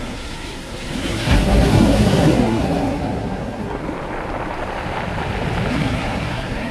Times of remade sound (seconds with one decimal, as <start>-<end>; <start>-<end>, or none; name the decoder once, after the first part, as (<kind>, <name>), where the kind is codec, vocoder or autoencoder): 0.0-3.8 (codec, SNAC); 5.7-6.7